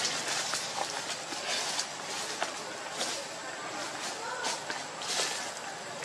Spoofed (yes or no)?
no